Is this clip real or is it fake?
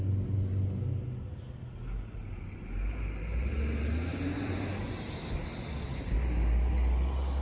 real